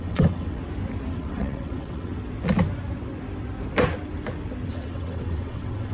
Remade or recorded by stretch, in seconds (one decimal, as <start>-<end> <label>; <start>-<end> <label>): 0.0-0.6 remade; 0.6-1.1 recorded; 1.1-2.1 remade; 2.1-4.7 recorded; 4.7-5.9 remade